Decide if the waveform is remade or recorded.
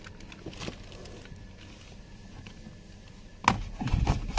recorded